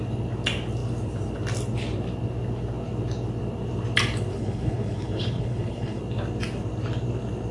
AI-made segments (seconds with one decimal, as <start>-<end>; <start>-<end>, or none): 4.3-6.0